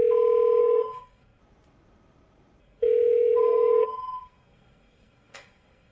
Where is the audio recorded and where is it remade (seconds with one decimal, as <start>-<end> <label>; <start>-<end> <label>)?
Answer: 0.0-0.6 recorded; 0.6-1.4 remade; 1.4-2.6 recorded; 2.6-5.9 remade

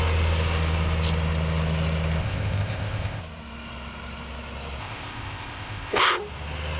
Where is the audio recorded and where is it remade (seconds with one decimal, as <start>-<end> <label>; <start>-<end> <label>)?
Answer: 0.0-2.2 recorded; 2.2-3.2 remade; 3.2-4.8 recorded; 4.8-6.2 remade; 6.2-6.8 recorded

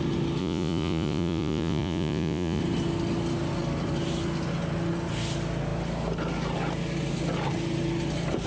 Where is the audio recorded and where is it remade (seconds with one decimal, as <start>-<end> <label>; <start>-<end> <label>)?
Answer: 0.0-0.4 recorded; 0.4-2.6 remade; 2.6-8.5 recorded

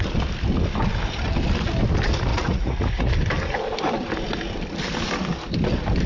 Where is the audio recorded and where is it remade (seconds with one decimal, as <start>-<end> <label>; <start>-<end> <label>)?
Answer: 0.0-2.3 recorded; 2.3-3.1 remade; 3.1-6.1 recorded

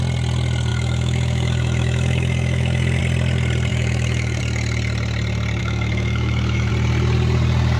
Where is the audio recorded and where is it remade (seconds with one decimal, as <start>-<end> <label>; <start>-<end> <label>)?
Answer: 0.0-0.7 recorded; 0.7-3.0 remade; 3.0-3.7 recorded; 3.7-4.4 remade; 4.4-5.6 recorded; 5.6-6.7 remade; 6.7-7.8 recorded

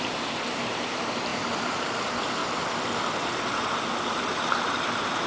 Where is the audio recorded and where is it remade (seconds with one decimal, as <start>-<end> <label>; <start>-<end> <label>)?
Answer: 0.0-2.4 remade; 2.4-4.1 recorded; 4.1-5.3 remade

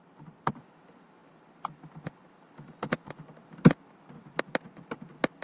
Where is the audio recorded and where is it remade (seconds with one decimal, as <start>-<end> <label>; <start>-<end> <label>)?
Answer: 0.0-5.4 recorded

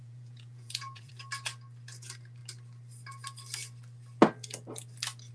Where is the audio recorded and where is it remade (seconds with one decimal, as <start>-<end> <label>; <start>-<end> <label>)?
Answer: 0.0-1.1 remade; 1.1-5.3 recorded